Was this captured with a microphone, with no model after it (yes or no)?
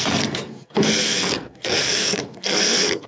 no